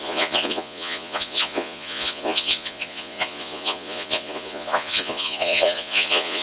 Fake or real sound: fake